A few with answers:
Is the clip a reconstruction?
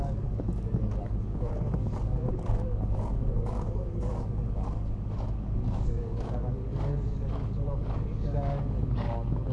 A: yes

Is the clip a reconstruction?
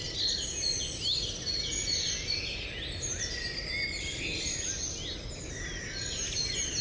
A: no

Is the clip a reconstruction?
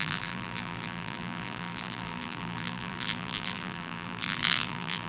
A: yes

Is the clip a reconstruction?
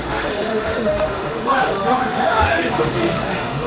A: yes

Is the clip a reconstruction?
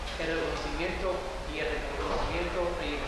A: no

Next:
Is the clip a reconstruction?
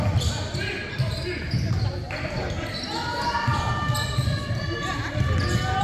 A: no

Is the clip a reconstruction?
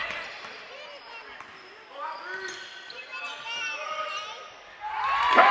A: no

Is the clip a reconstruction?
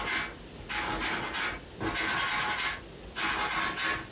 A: no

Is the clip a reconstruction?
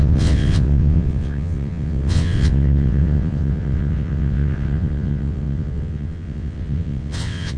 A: yes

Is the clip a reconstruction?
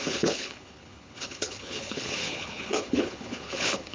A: yes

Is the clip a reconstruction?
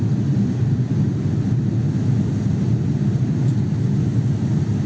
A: no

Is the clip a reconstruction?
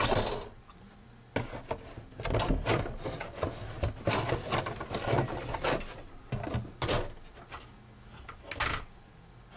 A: no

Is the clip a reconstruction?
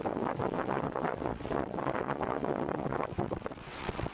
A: yes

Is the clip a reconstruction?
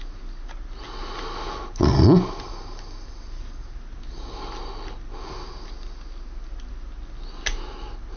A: no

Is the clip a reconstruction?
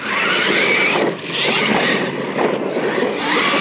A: no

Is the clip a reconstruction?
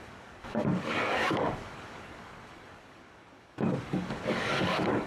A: yes